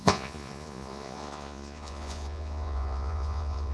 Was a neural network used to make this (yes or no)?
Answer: yes